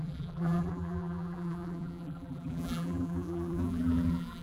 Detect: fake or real fake